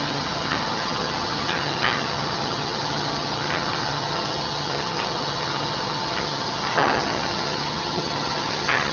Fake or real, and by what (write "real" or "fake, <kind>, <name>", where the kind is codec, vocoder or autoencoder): fake, vocoder, HiFi-GAN